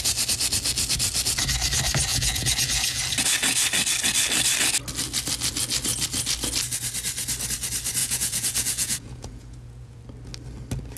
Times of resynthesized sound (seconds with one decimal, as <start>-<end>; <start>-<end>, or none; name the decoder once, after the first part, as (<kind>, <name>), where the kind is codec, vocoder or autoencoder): 2.1-3.0 (vocoder, Vocos); 8.0-10.0